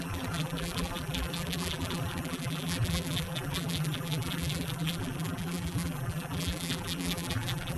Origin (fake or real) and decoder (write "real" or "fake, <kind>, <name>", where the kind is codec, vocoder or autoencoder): fake, vocoder, BigVGAN v2